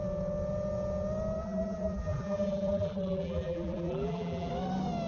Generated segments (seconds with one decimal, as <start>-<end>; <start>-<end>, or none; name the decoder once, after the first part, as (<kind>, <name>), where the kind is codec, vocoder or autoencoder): 1.4-4.5 (vocoder, BigVGAN v2)